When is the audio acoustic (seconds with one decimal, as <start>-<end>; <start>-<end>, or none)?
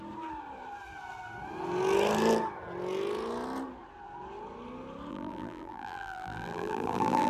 0.0-5.1